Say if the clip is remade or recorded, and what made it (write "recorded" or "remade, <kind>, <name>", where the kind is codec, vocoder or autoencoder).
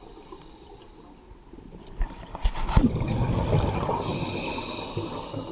recorded